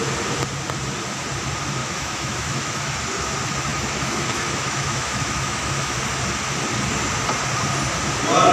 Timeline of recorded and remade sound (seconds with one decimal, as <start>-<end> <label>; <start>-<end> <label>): 0.0-1.8 recorded; 1.8-3.0 remade; 3.0-3.7 recorded; 3.7-6.0 remade; 6.0-8.5 recorded